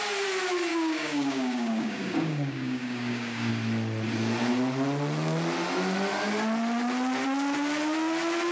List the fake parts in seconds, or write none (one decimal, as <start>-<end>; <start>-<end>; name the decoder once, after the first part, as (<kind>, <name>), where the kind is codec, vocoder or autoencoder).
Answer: 0.7-3.5 (codec, DAC)